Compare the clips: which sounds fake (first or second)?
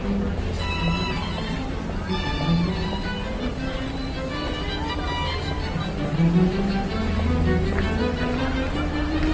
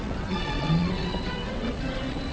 second